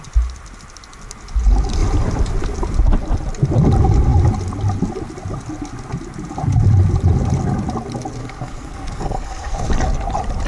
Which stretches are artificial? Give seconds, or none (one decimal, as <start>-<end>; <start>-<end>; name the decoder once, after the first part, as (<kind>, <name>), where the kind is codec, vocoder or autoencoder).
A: 8.2-9.7 (codec, SNAC)